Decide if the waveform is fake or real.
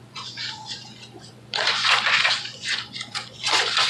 fake